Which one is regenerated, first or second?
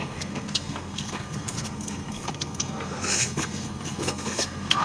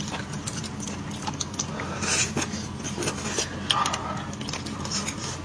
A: first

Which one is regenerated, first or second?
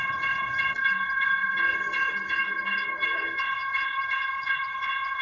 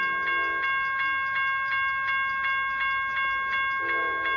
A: first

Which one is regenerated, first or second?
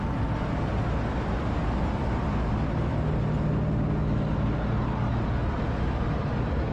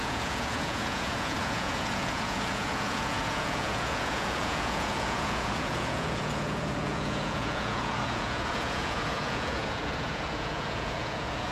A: second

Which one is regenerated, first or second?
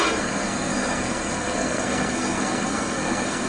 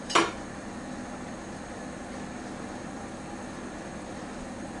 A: first